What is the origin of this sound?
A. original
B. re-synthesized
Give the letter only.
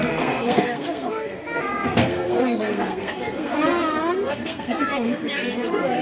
B